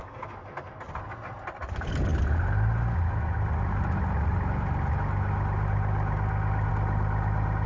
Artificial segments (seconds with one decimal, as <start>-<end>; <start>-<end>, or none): none